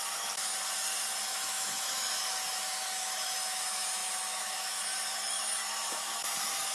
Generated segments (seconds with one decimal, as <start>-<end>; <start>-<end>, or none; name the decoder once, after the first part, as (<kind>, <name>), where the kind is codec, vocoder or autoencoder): 0.0-0.5 (autoencoder, DAC-VAE); 1.2-6.7